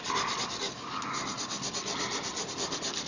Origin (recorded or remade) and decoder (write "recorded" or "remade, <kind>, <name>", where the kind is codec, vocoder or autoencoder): recorded